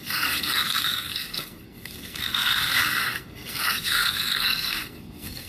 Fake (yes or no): yes